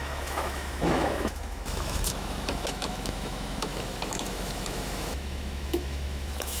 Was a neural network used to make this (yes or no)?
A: yes